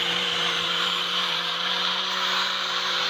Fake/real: fake